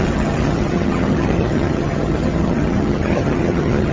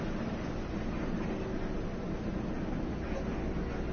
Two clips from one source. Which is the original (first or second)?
second